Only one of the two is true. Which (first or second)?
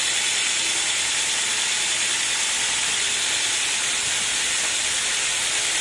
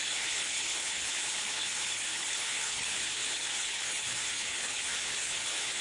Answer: first